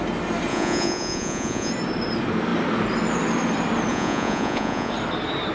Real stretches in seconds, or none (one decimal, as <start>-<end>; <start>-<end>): 0.0-0.5; 1.7-3.9; 4.9-5.5